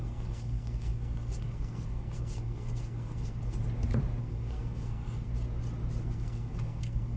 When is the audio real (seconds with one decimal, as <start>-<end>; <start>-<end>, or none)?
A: 3.6-4.2; 5.3-6.0